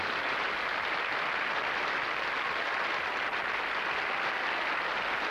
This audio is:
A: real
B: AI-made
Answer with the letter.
A